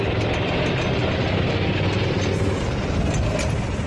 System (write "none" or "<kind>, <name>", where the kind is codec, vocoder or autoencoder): none